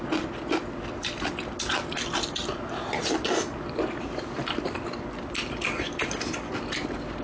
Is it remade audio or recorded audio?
recorded